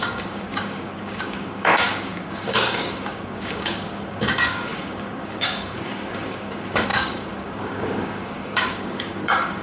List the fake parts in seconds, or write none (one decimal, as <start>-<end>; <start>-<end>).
0.0-9.6